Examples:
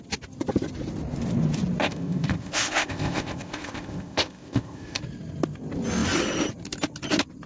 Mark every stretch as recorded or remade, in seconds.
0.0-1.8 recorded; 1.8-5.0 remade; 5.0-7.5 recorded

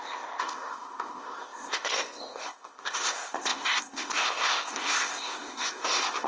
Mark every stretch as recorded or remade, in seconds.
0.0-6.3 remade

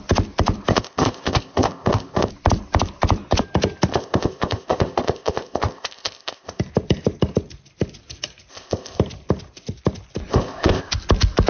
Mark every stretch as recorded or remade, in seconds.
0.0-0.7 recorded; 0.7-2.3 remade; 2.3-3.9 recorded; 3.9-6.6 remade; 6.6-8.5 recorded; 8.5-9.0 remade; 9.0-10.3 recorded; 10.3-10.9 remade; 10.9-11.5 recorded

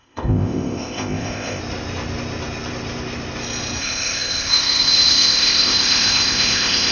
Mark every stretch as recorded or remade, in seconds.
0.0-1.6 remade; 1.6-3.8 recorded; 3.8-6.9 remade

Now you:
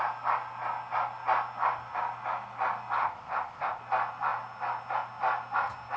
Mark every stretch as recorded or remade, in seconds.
0.0-3.0 recorded; 3.0-3.8 remade; 3.8-6.0 recorded

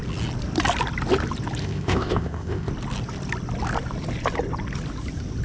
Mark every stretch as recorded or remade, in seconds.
0.0-1.6 recorded; 1.6-2.7 remade; 2.7-5.4 recorded